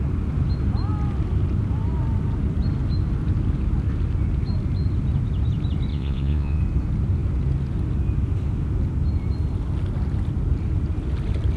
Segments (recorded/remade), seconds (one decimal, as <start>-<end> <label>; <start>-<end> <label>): 0.0-5.9 recorded; 5.9-6.6 remade; 6.6-11.6 recorded